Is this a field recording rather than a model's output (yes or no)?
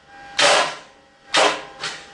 yes